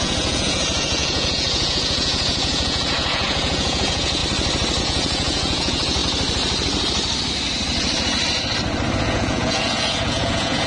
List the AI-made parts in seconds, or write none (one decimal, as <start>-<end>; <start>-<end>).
0.0-4.2; 4.8-6.0; 9.0-10.7